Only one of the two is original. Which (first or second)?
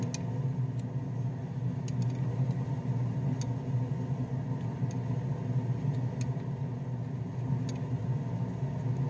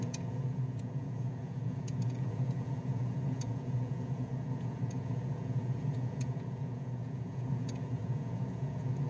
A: first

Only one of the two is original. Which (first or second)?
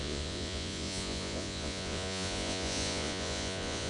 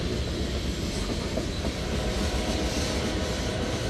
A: second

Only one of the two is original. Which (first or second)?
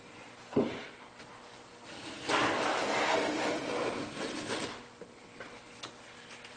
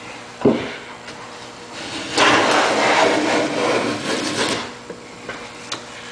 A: second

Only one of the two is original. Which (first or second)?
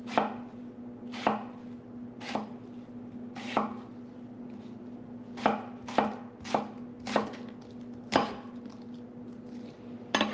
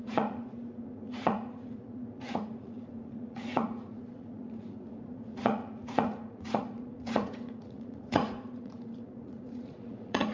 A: first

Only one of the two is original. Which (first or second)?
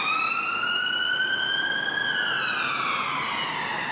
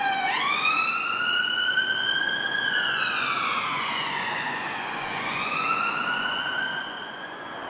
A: first